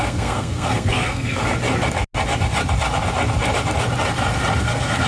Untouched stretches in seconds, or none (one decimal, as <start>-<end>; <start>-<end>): 1.5-4.6